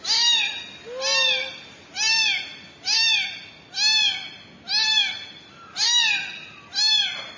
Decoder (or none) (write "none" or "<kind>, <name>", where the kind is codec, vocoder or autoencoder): none